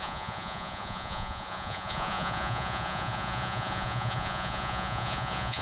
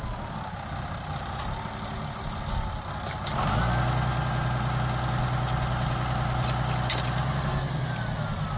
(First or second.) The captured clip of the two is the second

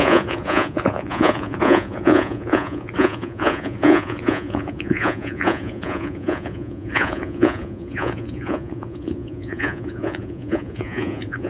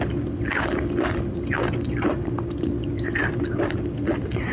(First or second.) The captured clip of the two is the second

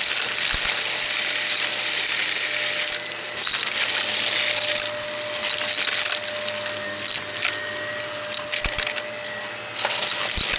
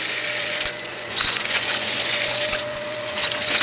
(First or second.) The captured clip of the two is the first